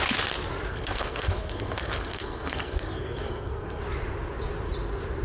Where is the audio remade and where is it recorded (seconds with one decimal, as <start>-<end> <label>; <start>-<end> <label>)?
0.0-0.7 recorded; 0.7-3.8 remade; 3.8-5.2 recorded